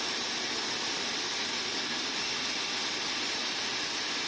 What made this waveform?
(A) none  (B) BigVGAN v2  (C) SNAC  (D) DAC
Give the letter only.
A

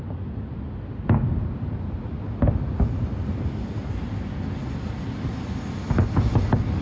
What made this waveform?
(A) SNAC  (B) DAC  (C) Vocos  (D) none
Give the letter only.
D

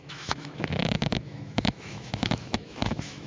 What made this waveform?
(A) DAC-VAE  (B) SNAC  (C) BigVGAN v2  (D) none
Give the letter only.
A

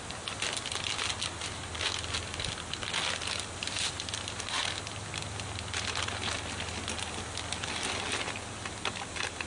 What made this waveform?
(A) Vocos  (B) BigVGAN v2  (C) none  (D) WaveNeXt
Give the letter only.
C